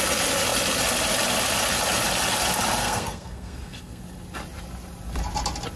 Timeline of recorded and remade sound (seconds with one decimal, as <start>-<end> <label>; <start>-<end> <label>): 0.0-2.8 recorded; 2.8-4.0 remade; 4.0-5.8 recorded